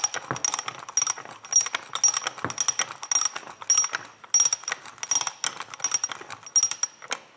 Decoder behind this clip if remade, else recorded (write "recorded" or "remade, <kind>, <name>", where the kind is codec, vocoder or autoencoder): recorded